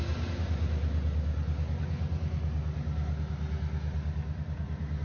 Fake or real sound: real